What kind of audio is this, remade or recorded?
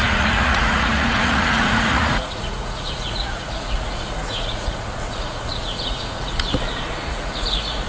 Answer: remade